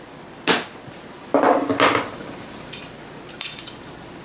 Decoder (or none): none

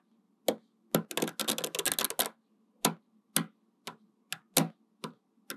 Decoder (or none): none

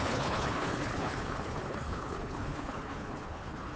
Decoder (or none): codec, HILCodec